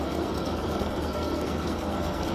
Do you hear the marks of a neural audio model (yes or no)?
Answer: yes